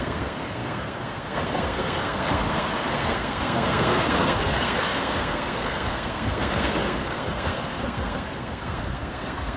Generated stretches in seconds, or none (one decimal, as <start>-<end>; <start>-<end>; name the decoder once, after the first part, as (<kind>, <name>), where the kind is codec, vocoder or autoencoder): 0.0-9.6 (codec, SNAC)

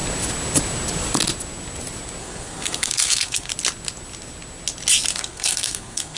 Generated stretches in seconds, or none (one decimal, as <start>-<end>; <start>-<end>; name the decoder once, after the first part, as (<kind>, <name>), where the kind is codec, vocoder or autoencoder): 2.2-3.5 (codec, SNAC); 5.1-6.2

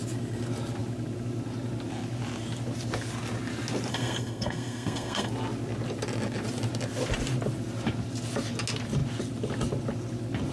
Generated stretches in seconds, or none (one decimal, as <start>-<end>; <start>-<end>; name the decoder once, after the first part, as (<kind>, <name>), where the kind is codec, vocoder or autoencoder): 3.9-5.3 (codec, SNAC)

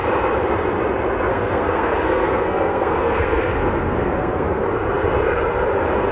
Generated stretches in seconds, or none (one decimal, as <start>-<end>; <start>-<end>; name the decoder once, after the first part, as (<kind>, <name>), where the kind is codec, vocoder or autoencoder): 1.3-4.6 (codec, SNAC)

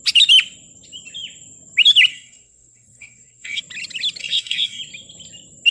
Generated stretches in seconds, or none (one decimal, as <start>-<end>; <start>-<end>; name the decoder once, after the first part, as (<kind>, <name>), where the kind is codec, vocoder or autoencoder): 2.1-3.6 (codec, SNAC); 4.2-4.8

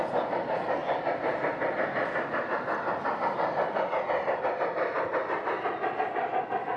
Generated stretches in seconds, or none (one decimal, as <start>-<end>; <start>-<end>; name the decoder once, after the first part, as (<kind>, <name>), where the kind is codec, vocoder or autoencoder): none

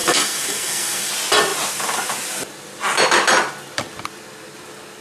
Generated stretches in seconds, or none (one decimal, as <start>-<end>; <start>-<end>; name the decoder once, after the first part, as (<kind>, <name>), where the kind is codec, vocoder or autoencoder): 0.0-1.1 (codec, SNAC)